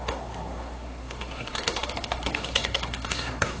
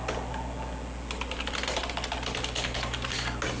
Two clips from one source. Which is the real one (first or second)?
second